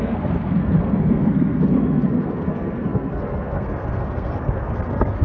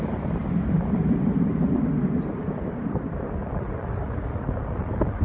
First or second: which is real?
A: second